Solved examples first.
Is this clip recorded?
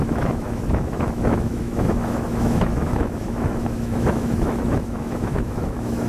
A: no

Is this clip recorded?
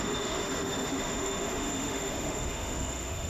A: no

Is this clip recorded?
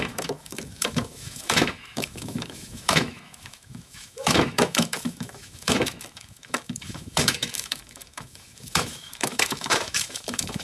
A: no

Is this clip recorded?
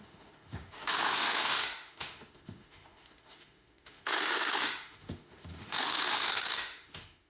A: no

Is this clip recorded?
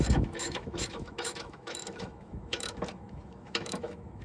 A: no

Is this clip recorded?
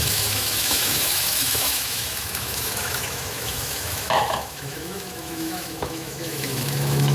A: no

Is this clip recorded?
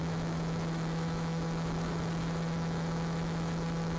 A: no